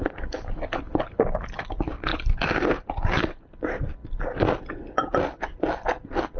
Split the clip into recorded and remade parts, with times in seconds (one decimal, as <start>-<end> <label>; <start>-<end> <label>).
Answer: 0.0-6.4 recorded